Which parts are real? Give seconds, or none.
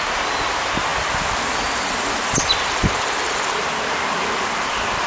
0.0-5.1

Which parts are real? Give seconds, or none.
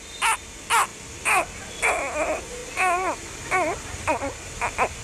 2.6-3.8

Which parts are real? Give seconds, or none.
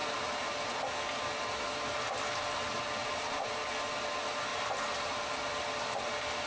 0.8-3.0; 3.6-4.5; 5.2-6.5